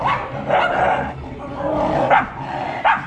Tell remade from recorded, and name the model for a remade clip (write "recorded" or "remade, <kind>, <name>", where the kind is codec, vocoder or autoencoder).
recorded